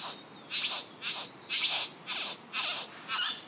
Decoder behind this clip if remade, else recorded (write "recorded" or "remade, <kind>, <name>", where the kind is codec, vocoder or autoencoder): recorded